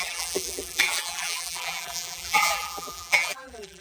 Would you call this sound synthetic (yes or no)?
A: yes